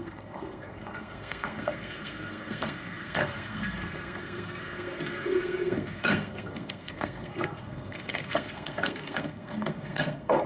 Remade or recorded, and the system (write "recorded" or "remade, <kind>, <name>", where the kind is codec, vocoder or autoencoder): remade, codec, SNAC